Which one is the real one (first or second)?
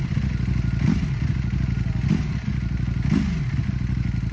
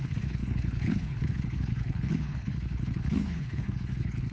first